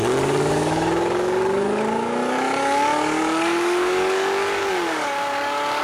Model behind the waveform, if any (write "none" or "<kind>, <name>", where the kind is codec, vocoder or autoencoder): codec, DAC